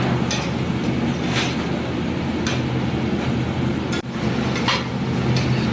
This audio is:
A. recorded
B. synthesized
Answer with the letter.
A